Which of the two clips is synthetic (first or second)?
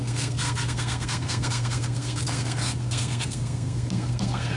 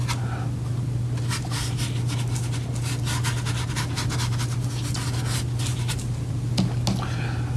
first